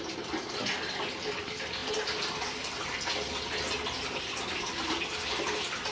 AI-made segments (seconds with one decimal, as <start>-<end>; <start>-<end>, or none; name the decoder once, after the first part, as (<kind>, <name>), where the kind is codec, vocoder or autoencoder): none